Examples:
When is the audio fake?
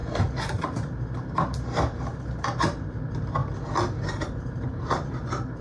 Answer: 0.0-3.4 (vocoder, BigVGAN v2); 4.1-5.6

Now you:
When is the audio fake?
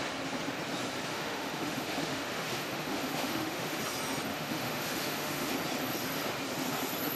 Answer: 1.1-3.8 (autoencoder, DAC-VAE); 4.3-5.5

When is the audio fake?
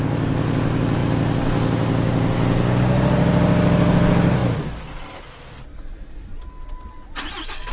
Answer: none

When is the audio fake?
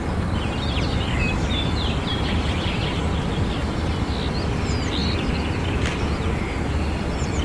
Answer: 0.9-1.5 (vocoder, BigVGAN v2); 2.1-3.6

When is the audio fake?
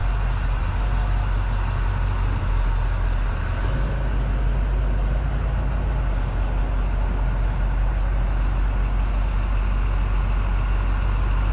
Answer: none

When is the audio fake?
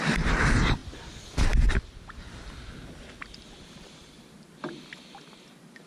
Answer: 0.0-5.9 (vocoder, BigVGAN v2)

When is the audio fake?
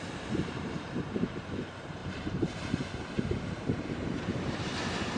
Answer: 0.0-5.2 (vocoder, BigVGAN v2)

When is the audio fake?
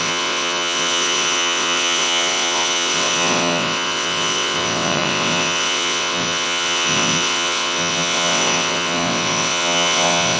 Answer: 0.0-10.4 (vocoder, WaveNeXt)